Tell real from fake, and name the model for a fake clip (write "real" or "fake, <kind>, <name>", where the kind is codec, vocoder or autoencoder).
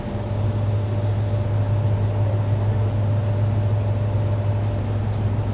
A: real